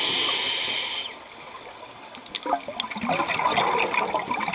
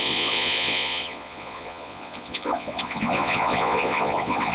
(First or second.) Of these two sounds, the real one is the first